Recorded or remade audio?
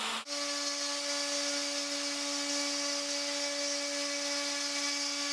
recorded